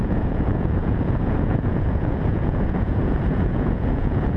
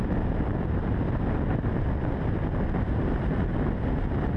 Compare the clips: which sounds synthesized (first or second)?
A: first